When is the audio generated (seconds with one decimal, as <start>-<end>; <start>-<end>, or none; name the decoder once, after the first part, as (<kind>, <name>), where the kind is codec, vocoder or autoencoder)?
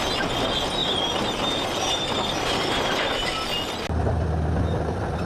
none